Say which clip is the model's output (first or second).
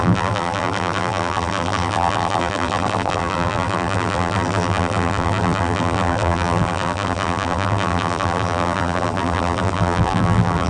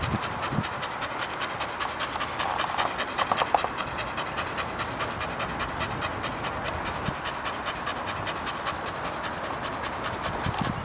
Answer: first